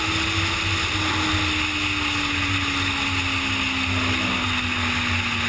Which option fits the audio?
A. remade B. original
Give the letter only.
B